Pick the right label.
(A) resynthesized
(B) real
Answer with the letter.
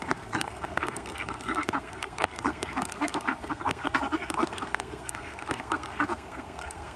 A